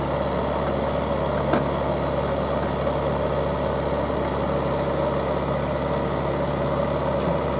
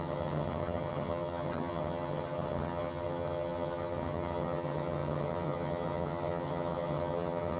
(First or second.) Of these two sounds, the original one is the first